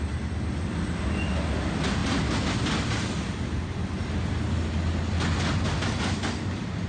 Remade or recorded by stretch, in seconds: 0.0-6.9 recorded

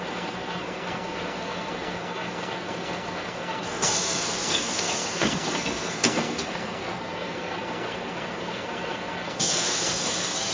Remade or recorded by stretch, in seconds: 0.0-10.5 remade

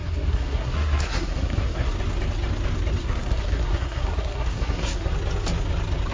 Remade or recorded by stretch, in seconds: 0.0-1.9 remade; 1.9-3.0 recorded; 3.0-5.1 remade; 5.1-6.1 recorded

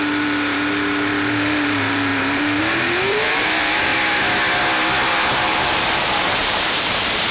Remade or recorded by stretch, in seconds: 0.0-3.9 remade; 3.9-5.1 recorded; 5.1-7.3 remade

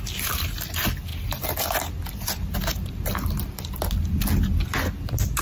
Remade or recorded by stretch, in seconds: 0.0-5.4 recorded

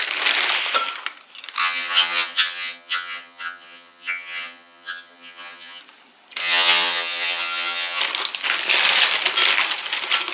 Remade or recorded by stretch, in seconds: 0.0-1.6 recorded; 1.6-5.8 remade; 5.8-6.4 recorded; 6.4-8.0 remade; 8.0-10.3 recorded

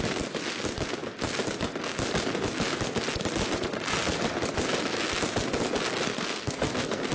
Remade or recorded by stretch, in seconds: 0.0-6.1 recorded; 6.1-7.1 remade